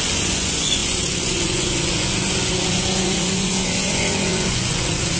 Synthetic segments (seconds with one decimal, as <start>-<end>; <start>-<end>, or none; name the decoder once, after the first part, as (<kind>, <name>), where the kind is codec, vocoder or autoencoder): 0.0-5.2 (vocoder, Vocos)